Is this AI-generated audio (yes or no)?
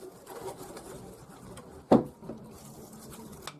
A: no